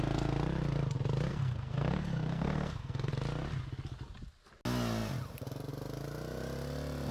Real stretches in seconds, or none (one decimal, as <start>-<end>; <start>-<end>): 0.0-1.3; 3.1-7.1